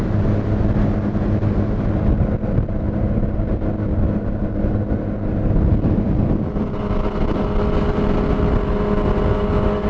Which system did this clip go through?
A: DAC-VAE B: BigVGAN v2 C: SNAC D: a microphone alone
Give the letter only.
D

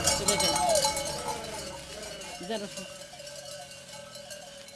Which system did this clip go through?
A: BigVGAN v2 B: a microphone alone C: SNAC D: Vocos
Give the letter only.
B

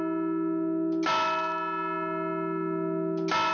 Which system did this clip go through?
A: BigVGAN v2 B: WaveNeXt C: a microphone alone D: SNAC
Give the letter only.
C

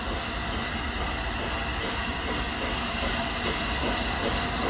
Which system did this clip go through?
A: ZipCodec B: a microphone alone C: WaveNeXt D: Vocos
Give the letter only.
B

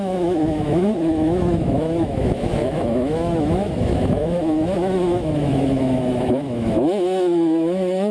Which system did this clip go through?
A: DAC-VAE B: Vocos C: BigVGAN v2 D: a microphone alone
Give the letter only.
A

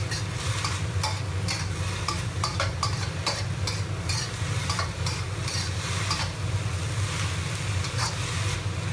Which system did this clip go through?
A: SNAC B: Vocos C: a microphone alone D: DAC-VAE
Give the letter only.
C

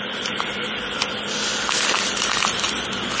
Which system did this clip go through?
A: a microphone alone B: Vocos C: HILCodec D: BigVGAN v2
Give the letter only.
D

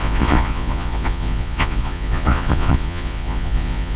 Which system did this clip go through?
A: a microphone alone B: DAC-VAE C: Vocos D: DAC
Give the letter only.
C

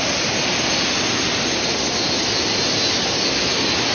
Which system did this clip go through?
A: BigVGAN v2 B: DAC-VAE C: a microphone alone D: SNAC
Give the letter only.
C